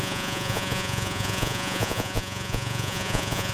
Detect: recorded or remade remade